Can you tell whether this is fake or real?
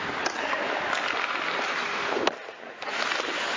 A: real